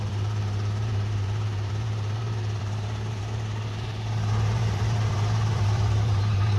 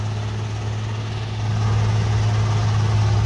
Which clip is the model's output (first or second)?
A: first